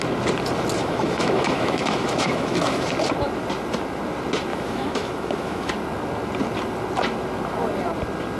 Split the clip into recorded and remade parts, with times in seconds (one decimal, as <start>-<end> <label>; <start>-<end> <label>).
0.0-0.8 recorded; 0.8-2.9 remade; 2.9-4.5 recorded; 4.5-5.7 remade; 5.7-8.4 recorded

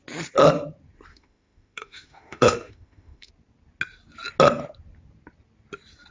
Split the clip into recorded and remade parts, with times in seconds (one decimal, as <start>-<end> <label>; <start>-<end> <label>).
0.0-1.1 recorded; 1.1-3.3 remade; 3.3-6.1 recorded

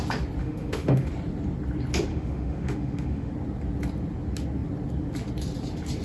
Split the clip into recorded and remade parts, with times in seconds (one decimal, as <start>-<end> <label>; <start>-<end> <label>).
0.0-0.4 recorded; 0.4-1.1 remade; 1.1-2.1 recorded; 2.1-3.3 remade; 3.3-6.0 recorded

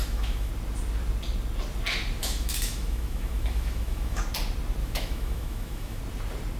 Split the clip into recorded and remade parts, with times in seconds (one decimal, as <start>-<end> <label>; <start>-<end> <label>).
0.0-0.5 remade; 0.5-2.2 recorded; 2.2-4.2 remade; 4.2-4.8 recorded; 4.8-6.0 remade; 6.0-6.6 recorded

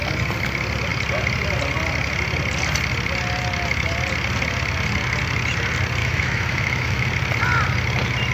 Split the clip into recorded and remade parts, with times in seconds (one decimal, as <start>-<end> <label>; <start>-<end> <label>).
0.0-6.0 recorded; 6.0-7.1 remade; 7.1-8.3 recorded

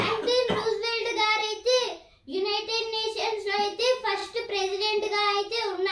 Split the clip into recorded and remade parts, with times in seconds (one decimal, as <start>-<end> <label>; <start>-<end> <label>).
0.0-1.4 recorded; 1.4-2.3 remade; 2.3-5.9 recorded

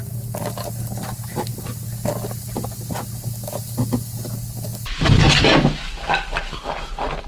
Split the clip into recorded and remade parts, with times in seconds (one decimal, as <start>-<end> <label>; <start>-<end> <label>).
0.0-7.3 recorded

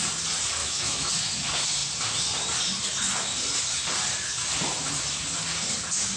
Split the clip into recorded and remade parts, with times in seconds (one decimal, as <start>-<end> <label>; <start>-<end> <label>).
0.0-0.6 recorded; 0.6-1.1 remade; 1.1-6.2 recorded